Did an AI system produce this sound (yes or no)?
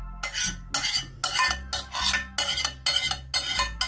no